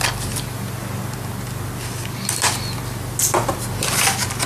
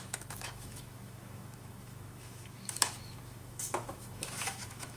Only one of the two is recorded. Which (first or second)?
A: first